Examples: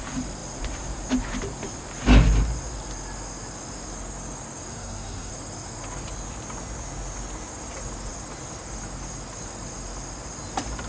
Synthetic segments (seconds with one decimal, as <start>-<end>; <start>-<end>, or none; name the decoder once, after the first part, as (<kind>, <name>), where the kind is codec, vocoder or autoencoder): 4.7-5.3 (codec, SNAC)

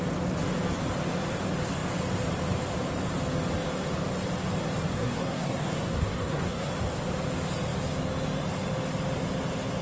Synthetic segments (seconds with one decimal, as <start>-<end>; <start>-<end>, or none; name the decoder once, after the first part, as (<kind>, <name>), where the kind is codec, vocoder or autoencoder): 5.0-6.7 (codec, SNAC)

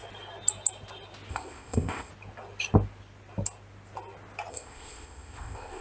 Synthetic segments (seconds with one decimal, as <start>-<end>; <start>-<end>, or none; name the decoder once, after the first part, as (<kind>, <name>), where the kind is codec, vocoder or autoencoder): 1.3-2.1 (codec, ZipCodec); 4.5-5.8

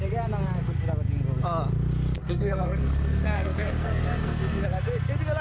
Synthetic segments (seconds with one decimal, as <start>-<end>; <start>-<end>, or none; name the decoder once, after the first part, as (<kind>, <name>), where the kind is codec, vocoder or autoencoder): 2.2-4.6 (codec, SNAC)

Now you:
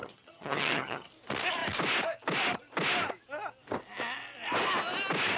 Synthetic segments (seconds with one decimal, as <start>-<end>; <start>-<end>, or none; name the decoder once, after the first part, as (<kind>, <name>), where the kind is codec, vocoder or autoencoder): 0.0-1.1 (vocoder, HiFi-GAN)